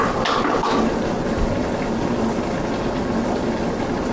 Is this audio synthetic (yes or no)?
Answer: no